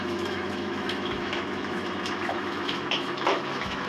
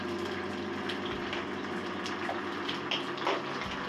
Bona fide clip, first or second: second